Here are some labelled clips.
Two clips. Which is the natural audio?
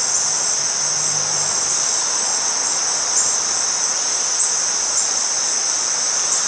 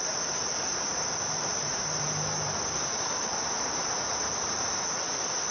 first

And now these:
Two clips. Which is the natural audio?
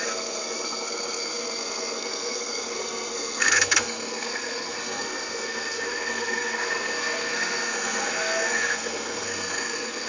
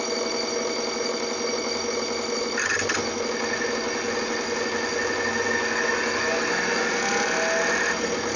second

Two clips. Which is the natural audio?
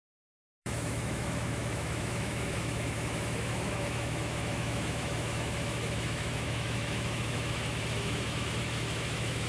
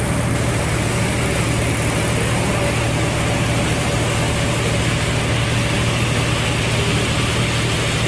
second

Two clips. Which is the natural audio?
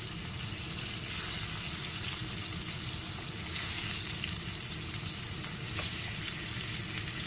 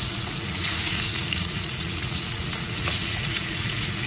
first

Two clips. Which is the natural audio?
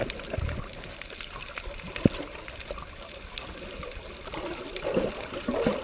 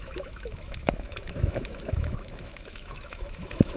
first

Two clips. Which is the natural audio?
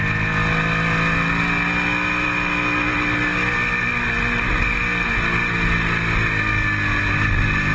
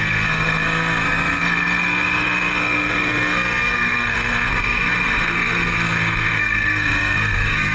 first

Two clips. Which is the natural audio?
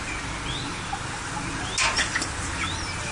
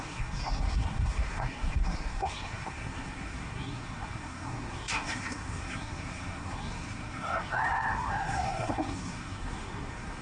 first